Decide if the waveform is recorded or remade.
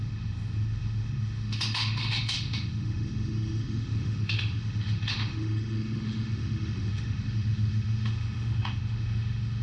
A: remade